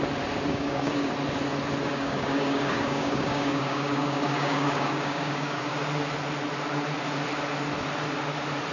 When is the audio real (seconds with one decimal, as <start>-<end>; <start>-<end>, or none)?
0.0-0.5; 1.1-1.9; 5.7-8.7